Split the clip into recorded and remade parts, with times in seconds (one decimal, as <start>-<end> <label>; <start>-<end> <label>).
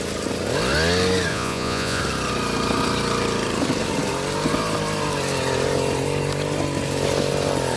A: 0.0-1.3 recorded; 1.3-2.0 remade; 2.0-7.8 recorded